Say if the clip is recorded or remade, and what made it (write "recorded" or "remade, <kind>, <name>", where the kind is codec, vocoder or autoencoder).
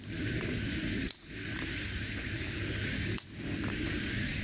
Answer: recorded